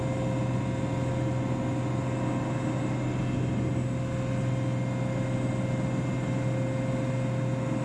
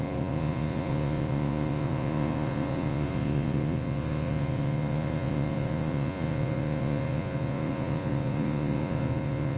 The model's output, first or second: second